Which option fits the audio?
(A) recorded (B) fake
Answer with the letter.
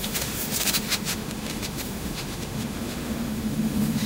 B